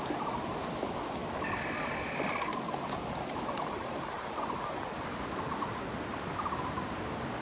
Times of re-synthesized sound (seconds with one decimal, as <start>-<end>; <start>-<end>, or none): 2.5-4.4

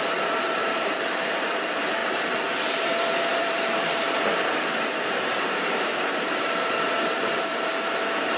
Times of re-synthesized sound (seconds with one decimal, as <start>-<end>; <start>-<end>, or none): 0.0-8.4

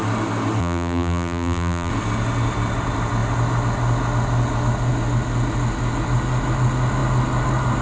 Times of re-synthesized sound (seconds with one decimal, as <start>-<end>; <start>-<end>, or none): 0.6-1.9

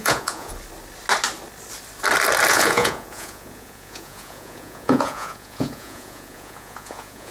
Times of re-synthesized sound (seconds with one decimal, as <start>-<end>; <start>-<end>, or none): 0.0-0.5; 2.5-7.3

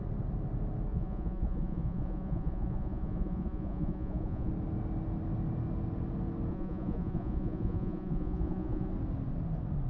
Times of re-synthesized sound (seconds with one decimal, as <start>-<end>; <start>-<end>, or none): 0.9-4.5; 6.5-8.9

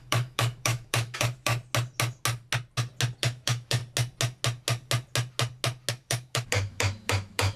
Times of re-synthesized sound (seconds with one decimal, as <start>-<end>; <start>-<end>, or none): 0.0-1.5; 3.2-3.8; 5.9-7.6

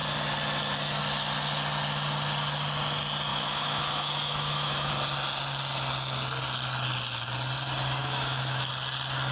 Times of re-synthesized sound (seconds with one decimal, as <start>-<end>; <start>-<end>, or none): 3.3-4.9; 8.0-8.7